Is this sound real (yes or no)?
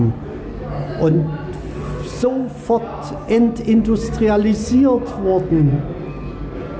yes